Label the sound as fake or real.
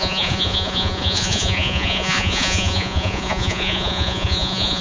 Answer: fake